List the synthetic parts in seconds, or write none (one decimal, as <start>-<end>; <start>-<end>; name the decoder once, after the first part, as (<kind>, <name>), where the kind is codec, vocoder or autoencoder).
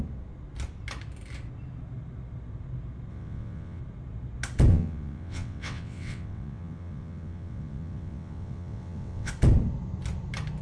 3.1-3.8 (vocoder, WaveNeXt); 4.7-9.3